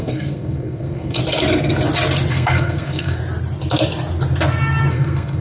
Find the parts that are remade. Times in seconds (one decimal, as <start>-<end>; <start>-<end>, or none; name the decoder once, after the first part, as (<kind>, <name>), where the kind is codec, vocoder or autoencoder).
0.0-1.2 (codec, SNAC); 2.3-3.2; 4.9-5.4

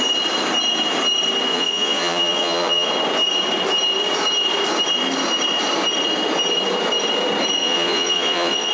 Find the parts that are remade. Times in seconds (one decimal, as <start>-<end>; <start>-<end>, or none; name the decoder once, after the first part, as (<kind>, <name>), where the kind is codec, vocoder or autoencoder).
1.5-2.9 (vocoder, Vocos); 7.6-8.7

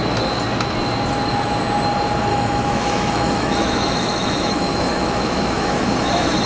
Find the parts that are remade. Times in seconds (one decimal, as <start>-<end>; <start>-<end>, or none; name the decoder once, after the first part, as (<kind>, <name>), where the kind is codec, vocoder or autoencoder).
2.3-6.5 (autoencoder, DAC-VAE)

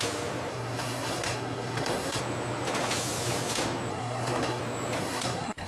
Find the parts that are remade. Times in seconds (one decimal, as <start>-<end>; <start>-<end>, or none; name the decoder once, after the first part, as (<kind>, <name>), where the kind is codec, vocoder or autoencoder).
0.5-2.2 (codec, SNAC); 3.9-4.6; 5.0-5.7

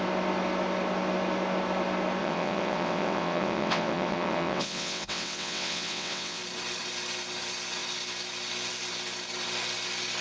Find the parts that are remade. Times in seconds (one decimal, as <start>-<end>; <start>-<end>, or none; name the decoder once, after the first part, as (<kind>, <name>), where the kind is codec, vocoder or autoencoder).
2.2-6.4 (vocoder, WaveNeXt)